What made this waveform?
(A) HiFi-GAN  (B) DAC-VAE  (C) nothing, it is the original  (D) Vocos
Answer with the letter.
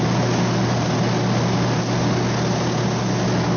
C